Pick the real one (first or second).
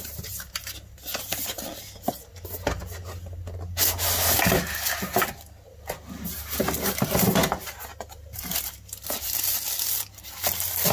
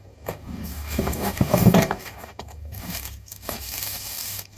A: first